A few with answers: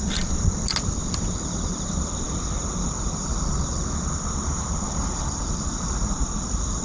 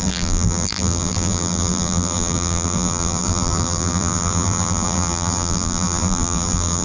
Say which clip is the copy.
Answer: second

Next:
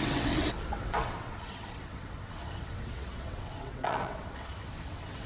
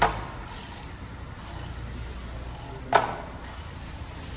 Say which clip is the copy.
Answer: first